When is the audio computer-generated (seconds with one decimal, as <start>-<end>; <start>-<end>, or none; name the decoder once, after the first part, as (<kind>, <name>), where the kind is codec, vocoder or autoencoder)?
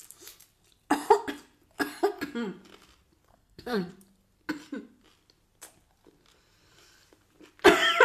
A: 3.3-3.9 (codec, SNAC)